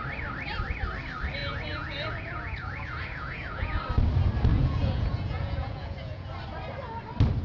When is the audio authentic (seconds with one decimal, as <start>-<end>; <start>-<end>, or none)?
0.0-1.4; 3.8-4.5; 6.3-7.4